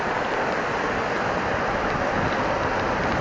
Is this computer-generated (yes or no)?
no